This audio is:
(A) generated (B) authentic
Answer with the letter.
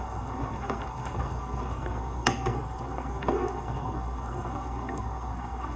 A